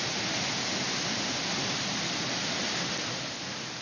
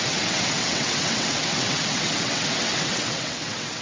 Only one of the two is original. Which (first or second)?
first